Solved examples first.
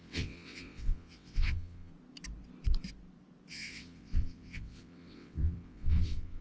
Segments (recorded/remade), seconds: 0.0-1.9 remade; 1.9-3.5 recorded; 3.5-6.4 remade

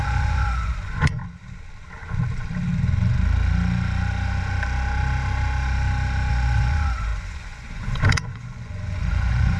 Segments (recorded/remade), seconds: 0.0-1.2 remade; 1.2-6.3 recorded; 6.3-9.6 remade

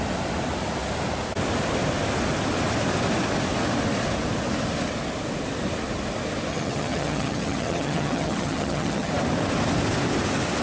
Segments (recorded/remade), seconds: 0.0-6.5 recorded; 6.5-9.1 remade; 9.1-10.6 recorded

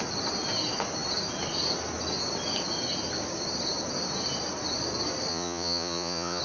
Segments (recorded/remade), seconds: 0.0-5.3 recorded; 5.3-6.4 remade

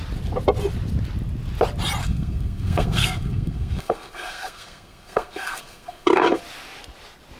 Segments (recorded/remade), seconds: 0.0-2.0 recorded; 2.0-6.4 remade; 6.4-7.4 recorded

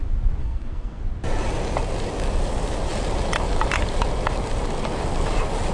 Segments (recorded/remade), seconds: 0.0-0.4 recorded; 0.4-1.0 remade; 1.0-5.7 recorded